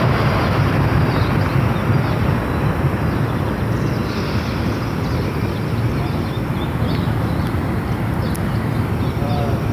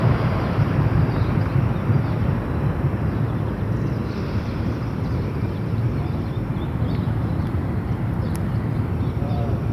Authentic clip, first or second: first